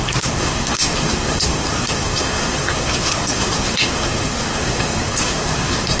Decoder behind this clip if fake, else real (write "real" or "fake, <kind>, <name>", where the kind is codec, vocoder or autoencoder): fake, codec, SNAC